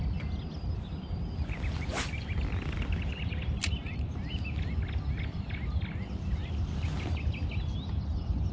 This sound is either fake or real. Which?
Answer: real